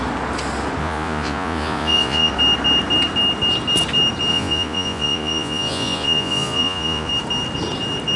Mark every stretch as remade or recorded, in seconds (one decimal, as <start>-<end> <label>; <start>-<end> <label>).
0.0-0.8 recorded; 0.8-2.3 remade; 2.3-4.3 recorded; 4.3-7.1 remade; 7.1-8.2 recorded